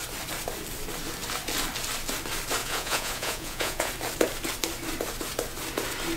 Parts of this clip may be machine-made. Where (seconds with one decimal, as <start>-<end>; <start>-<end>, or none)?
2.6-3.9